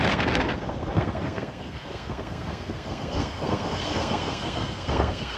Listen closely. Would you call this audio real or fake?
fake